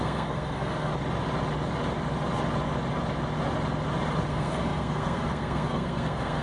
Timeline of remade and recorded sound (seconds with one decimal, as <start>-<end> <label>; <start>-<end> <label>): 0.0-0.9 remade; 0.9-4.3 recorded; 4.3-6.4 remade